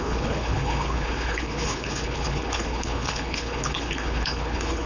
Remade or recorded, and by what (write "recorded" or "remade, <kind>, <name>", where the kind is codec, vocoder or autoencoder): remade, codec, HILCodec